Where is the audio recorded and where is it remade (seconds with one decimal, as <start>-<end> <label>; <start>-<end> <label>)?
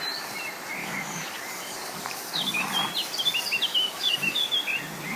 0.0-0.8 recorded; 0.8-2.7 remade; 2.7-3.7 recorded; 3.7-4.5 remade; 4.5-5.2 recorded